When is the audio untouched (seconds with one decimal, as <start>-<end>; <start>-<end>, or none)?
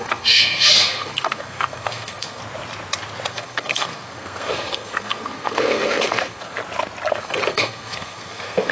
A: 2.4-3.3; 6.6-7.1